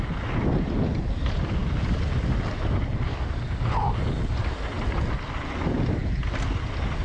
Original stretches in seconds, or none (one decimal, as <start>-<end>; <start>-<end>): 0.0-7.0